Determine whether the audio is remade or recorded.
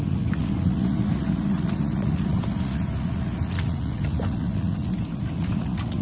remade